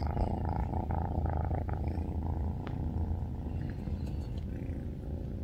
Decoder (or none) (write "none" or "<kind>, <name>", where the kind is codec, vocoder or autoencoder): none